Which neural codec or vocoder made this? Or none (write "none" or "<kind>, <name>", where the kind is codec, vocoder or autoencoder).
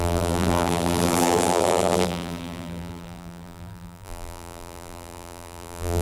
vocoder, BigVGAN v2